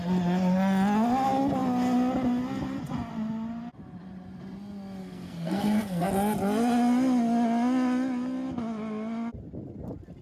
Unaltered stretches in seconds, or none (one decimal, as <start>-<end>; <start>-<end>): 0.0-5.0; 6.1-10.2